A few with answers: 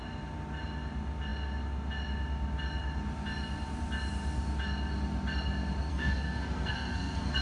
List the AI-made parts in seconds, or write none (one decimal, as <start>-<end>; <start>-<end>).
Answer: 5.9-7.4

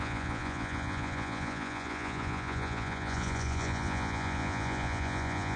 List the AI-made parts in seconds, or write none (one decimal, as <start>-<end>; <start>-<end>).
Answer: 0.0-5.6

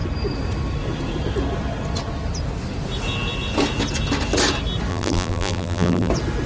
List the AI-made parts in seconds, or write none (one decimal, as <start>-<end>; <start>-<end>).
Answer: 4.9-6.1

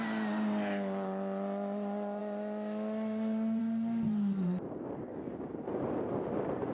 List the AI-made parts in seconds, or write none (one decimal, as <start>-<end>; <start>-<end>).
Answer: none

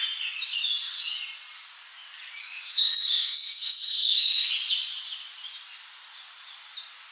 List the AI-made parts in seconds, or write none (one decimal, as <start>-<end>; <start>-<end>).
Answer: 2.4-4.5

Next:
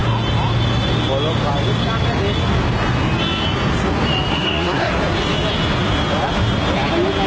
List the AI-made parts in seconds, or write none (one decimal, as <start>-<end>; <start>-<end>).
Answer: 4.3-4.9

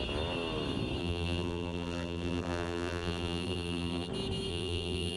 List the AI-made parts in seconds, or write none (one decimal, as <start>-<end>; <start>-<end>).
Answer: 1.0-4.1; 4.5-5.2